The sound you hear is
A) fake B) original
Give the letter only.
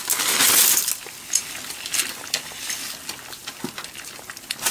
B